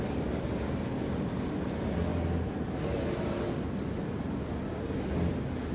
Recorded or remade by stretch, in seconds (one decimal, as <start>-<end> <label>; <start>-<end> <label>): 0.0-5.7 recorded